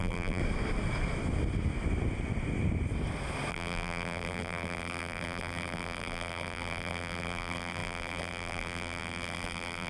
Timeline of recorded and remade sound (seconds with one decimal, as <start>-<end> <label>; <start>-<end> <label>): 0.0-0.4 remade; 0.4-3.5 recorded; 3.5-9.9 remade